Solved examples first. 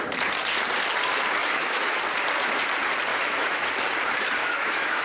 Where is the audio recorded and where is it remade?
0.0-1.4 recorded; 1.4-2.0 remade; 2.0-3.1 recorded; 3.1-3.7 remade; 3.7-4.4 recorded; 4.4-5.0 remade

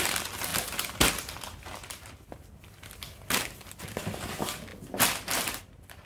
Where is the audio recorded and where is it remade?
0.0-6.1 recorded

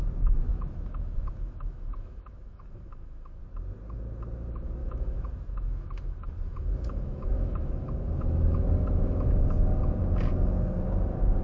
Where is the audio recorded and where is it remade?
0.0-0.5 recorded; 0.5-3.4 remade; 3.4-4.8 recorded; 4.8-9.4 remade; 9.4-11.4 recorded

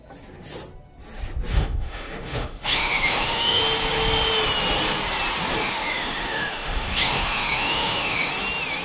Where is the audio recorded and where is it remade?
0.0-1.5 recorded; 1.5-3.6 remade; 3.6-5.6 recorded; 5.6-8.3 remade; 8.3-8.8 recorded

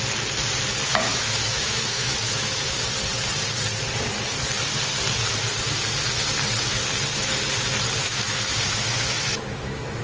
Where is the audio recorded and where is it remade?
0.0-1.1 recorded; 1.1-2.8 remade; 2.8-8.0 recorded; 8.0-10.0 remade